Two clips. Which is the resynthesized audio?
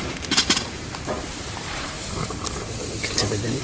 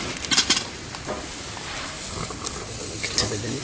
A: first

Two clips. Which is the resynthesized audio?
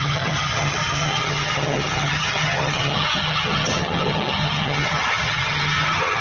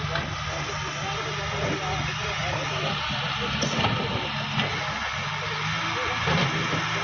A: first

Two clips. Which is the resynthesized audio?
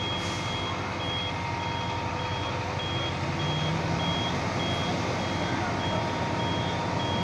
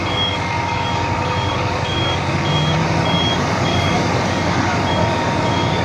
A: second